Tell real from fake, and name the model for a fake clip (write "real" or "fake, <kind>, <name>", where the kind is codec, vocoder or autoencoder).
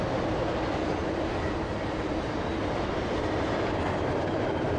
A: fake, vocoder, BigVGAN v2